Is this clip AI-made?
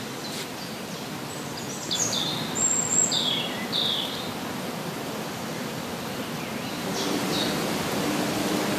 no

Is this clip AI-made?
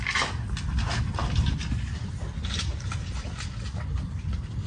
no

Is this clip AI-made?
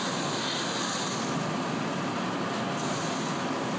no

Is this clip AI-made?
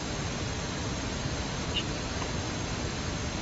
yes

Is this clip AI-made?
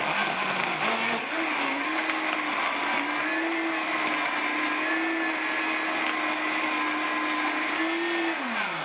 no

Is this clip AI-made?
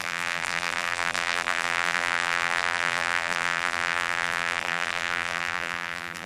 yes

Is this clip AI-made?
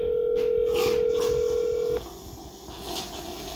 no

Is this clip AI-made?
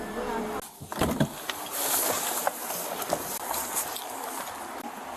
no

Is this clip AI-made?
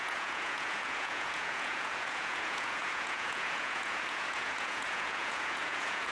yes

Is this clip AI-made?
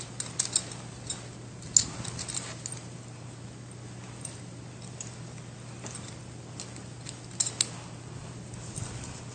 no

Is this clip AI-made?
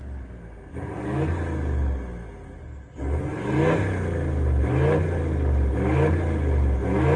no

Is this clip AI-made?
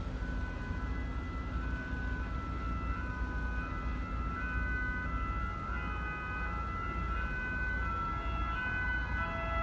no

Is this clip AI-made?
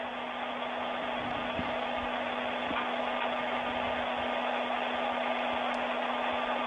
no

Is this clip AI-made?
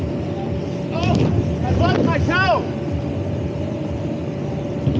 no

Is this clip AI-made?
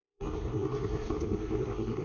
yes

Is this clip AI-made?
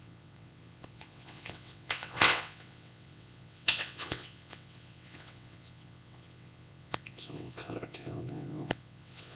yes